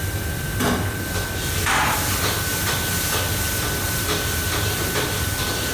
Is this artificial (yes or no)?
no